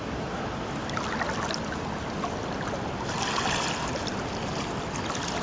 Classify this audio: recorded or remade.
recorded